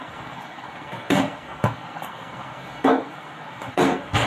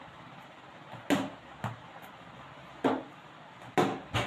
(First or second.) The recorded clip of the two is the second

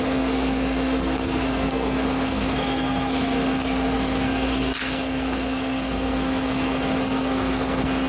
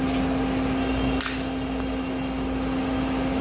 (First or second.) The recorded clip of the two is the second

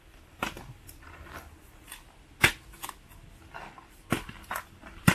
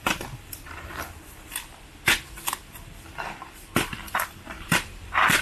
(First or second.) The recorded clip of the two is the first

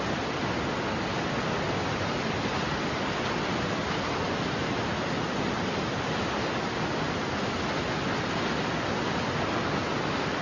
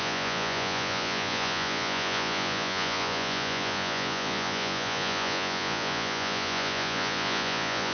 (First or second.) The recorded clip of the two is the first